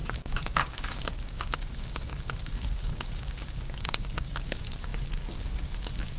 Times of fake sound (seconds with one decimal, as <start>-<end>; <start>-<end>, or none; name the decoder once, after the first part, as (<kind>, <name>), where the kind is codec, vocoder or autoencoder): 0.0-6.2 (codec, DAC)